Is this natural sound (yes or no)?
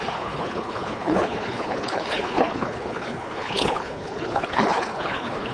no